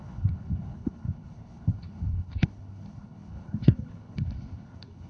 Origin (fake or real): fake